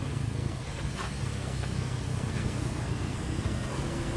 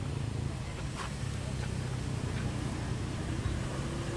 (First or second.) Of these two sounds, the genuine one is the second